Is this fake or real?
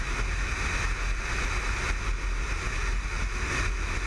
real